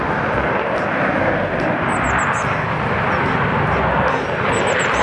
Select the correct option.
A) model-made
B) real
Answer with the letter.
B